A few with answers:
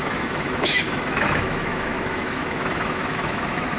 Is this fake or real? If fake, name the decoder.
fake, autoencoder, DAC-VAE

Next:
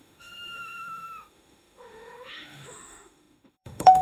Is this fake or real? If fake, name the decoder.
fake, autoencoder, DAC-VAE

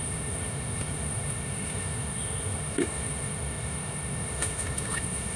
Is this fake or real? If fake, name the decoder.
fake, autoencoder, DAC-VAE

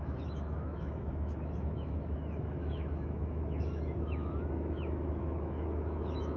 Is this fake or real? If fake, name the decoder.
fake, autoencoder, DAC-VAE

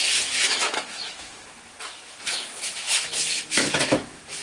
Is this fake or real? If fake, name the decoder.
fake, autoencoder, DAC-VAE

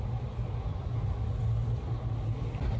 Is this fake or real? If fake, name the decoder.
real